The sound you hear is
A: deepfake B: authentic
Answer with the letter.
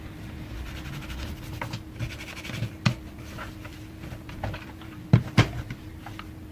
B